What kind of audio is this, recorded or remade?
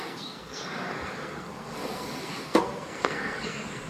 remade